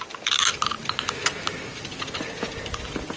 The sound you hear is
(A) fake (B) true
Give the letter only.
B